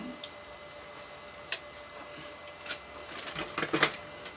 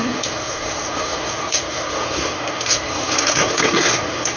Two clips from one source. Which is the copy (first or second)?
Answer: second